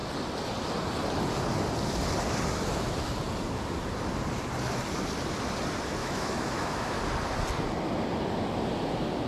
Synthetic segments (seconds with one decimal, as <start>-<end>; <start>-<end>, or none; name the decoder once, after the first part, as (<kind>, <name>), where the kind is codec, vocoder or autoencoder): 6.0-7.0 (autoencoder, DAC-VAE)